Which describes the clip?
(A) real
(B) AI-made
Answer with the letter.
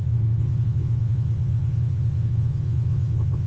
B